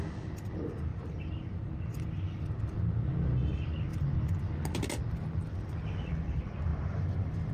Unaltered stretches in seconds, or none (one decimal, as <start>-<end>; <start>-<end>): 0.0-0.9; 1.7-6.7